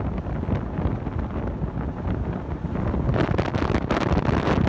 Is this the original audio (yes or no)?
yes